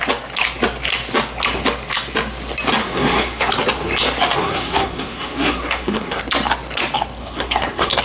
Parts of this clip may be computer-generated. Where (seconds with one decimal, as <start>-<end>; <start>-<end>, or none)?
2.8-3.5; 4.4-6.2; 7.2-8.0